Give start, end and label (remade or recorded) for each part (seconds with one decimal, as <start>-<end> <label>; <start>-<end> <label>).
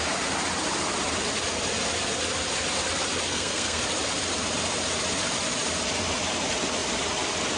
0.0-3.3 recorded; 3.3-3.8 remade; 3.8-7.6 recorded